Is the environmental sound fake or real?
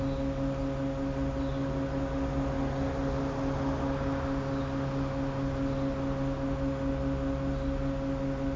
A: real